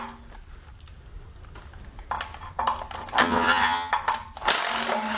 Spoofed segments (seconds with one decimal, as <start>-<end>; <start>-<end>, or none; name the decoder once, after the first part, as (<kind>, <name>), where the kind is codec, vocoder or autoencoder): 3.2-3.9 (vocoder, HiFi-GAN)